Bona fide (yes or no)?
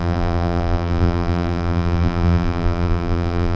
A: no